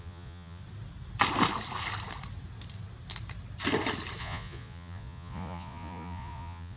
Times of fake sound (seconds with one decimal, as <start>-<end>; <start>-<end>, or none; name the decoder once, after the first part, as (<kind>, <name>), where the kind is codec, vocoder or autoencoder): 0.0-0.6 (vocoder, Vocos); 4.2-6.8